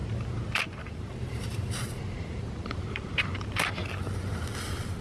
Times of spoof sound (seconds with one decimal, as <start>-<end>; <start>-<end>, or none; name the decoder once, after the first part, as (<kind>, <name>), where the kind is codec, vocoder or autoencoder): 0.0-3.8 (vocoder, BigVGAN v2)